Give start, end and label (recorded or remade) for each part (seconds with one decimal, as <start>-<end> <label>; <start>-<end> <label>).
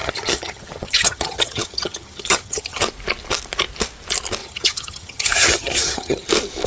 0.0-2.8 remade; 2.8-4.4 recorded; 4.4-6.3 remade; 6.3-6.7 recorded